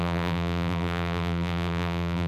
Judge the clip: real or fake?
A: fake